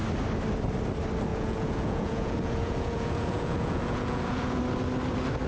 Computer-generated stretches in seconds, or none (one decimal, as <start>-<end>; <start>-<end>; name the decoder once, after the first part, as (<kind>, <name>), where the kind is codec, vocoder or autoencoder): 1.3-4.6 (vocoder, Vocos)